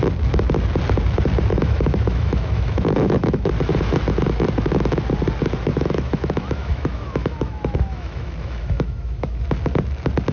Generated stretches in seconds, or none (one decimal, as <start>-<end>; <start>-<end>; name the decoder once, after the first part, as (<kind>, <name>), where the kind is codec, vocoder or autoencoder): 1.5-3.5 (autoencoder, DAC-VAE); 5.7-9.4